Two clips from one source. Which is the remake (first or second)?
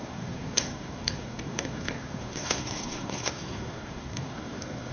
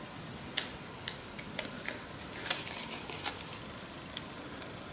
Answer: first